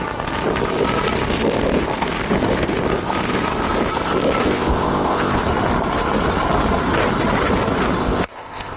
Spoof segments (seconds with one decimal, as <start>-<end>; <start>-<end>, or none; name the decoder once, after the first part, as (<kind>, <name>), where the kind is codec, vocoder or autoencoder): 4.4-5.4 (codec, ZipCodec); 8.0-8.8